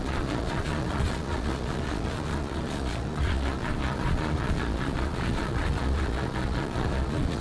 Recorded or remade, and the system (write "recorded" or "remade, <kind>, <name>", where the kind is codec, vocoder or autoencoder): remade, vocoder, Vocos